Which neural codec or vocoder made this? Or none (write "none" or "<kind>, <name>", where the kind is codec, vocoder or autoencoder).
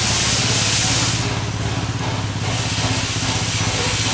none